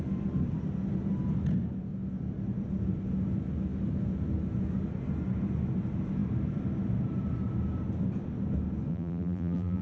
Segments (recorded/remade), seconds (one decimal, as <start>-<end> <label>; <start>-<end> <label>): 0.0-8.9 recorded; 8.9-9.8 remade